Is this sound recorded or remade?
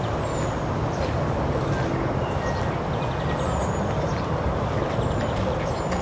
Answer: recorded